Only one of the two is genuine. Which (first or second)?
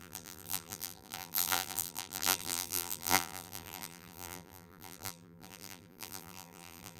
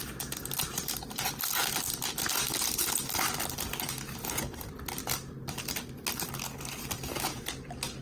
second